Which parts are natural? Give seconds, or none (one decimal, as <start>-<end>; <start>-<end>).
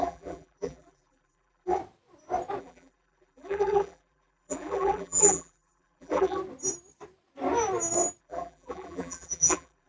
1.8-2.6; 6.4-8.2